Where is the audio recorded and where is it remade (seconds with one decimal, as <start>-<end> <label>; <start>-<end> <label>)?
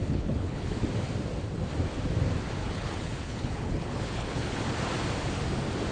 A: 0.0-0.8 remade; 0.8-2.6 recorded; 2.6-4.6 remade; 4.6-5.9 recorded